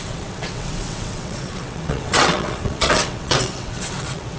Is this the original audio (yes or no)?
no